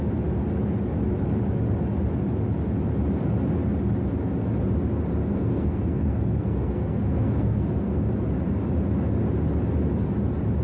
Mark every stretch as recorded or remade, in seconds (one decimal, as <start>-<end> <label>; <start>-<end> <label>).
0.0-5.2 recorded; 5.2-8.1 remade; 8.1-10.6 recorded